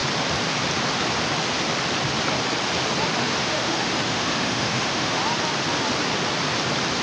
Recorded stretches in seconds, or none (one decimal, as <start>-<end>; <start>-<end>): 0.0-3.2; 5.2-7.0